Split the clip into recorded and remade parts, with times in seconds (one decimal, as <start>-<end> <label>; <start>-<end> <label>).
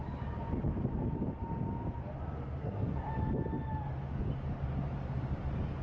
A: 0.0-2.6 recorded; 2.6-3.1 remade; 3.1-5.8 recorded